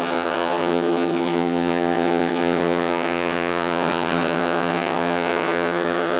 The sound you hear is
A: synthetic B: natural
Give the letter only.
A